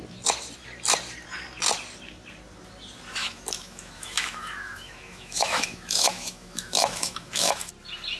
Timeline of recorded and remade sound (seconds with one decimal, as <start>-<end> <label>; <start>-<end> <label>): 0.0-3.2 recorded; 3.2-7.7 remade; 7.7-8.2 recorded